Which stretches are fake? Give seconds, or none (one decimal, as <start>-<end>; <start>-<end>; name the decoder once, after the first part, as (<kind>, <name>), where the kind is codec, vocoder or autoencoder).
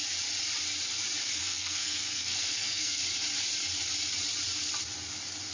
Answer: 1.4-3.0 (codec, SNAC)